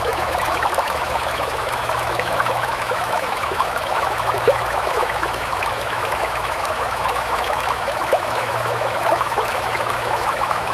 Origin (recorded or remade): remade